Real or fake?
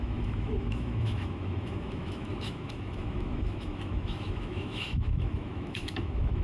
fake